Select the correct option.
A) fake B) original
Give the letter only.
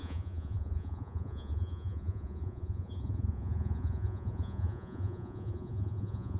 A